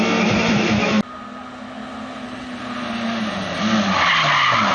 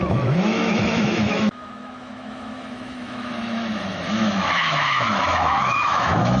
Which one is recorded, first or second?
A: first